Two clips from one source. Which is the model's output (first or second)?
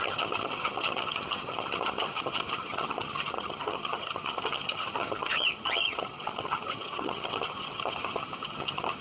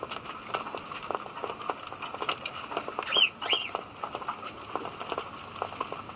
first